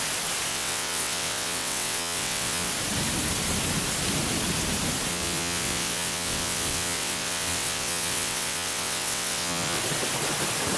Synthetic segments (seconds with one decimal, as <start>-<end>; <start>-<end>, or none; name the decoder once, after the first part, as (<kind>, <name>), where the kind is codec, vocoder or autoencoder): 0.5-2.7 (vocoder, WaveNeXt); 5.1-9.8